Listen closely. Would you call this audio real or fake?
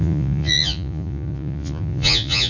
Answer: fake